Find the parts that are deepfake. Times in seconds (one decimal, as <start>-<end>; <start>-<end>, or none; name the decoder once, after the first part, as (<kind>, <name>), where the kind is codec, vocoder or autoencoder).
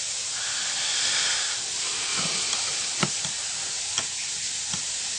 none